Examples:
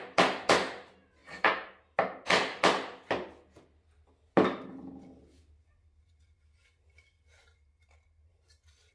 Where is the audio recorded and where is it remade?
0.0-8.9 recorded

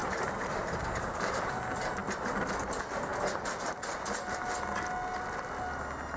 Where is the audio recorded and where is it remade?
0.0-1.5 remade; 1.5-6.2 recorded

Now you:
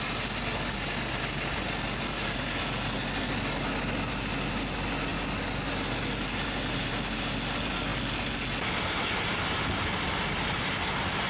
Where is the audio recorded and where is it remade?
0.0-11.3 recorded

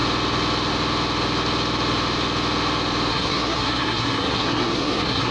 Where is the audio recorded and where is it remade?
0.0-3.1 recorded; 3.1-5.3 remade

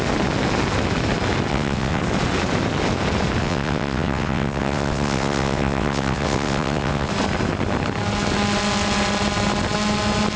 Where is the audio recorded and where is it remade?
0.0-1.5 recorded; 1.5-2.0 remade; 2.0-3.4 recorded; 3.4-7.1 remade; 7.1-10.4 recorded

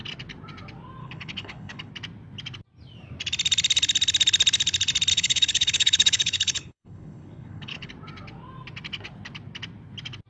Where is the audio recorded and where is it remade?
0.0-1.0 recorded; 1.0-1.9 remade; 1.9-5.1 recorded; 5.1-7.9 remade; 7.9-10.3 recorded

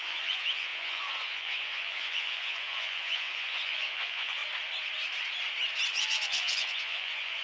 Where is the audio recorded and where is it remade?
0.0-4.4 remade; 4.4-5.9 recorded; 5.9-7.4 remade